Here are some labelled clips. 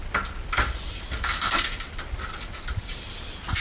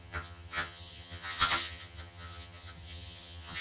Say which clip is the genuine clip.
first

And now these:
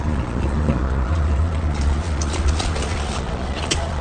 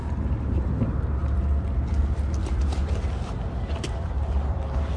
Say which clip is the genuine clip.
second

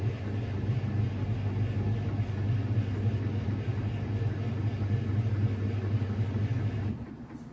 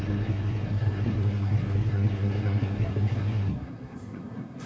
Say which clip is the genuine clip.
first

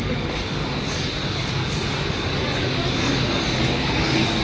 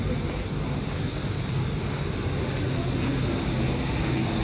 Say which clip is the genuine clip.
second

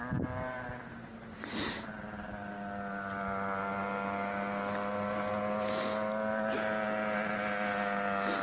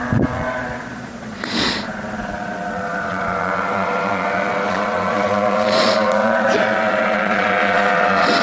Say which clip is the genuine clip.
first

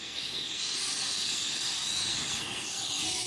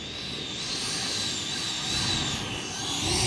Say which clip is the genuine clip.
second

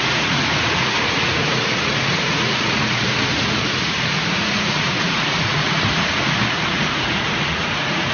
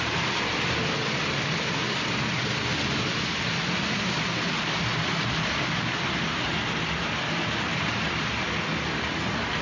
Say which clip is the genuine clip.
second